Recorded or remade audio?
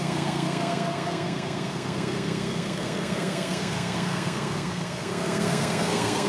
remade